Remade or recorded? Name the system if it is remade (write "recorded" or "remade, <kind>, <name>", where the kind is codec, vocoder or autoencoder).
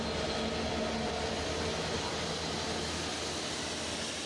recorded